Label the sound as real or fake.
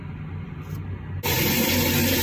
real